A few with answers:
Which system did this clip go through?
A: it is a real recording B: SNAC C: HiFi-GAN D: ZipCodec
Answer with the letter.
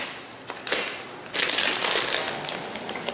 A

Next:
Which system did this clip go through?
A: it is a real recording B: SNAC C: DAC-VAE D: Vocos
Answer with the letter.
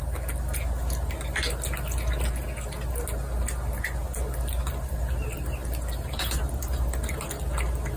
A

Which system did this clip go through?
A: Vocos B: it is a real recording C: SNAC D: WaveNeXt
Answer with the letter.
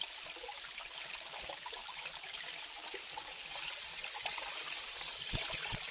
B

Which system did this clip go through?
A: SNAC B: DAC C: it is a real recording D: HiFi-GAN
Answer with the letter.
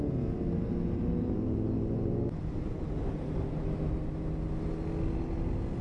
C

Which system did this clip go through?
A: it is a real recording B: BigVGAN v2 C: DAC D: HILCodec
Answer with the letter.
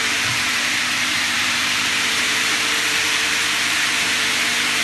B